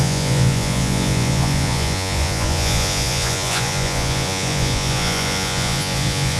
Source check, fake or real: fake